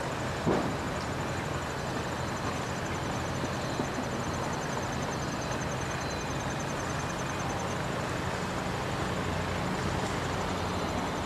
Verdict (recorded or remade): recorded